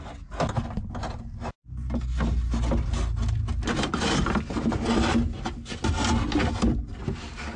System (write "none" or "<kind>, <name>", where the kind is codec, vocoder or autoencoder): none